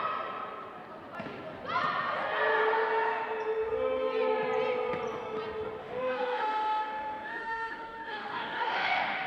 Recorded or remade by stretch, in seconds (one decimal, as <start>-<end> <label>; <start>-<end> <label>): 0.0-5.8 recorded; 5.8-9.3 remade